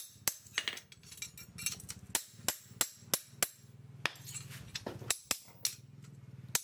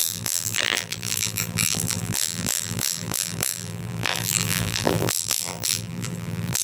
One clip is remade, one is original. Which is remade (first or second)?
second